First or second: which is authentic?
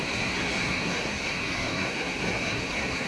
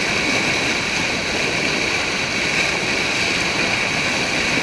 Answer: second